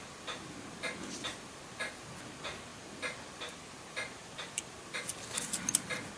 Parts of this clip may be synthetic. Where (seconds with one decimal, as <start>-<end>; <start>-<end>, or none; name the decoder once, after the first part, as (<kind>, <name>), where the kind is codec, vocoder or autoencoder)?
4.2-5.0 (vocoder, BigVGAN v2)